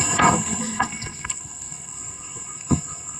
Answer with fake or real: fake